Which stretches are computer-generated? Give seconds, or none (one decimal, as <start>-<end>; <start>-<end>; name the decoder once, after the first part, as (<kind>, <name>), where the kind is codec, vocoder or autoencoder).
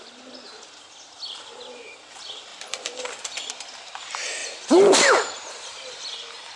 none